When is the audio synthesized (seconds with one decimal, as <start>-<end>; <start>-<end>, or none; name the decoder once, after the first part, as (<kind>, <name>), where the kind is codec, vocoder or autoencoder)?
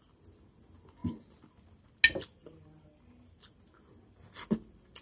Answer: none